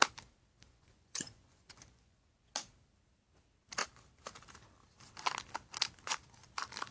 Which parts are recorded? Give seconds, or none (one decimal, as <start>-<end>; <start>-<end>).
0.0-0.7; 2.5-6.9